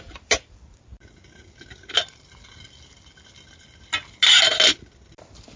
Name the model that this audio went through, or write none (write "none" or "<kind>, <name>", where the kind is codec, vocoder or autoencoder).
none